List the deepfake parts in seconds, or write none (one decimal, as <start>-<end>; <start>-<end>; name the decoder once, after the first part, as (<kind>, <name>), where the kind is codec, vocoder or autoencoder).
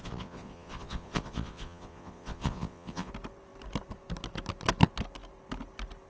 0.0-3.1 (vocoder, Vocos)